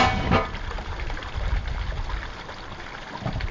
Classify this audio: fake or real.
real